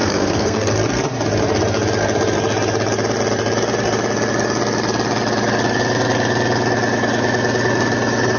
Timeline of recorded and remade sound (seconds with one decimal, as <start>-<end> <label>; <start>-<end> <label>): 0.0-0.7 remade; 0.7-8.4 recorded